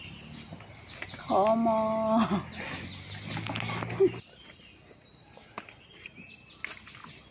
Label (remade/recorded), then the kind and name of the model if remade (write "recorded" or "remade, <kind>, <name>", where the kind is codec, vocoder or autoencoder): recorded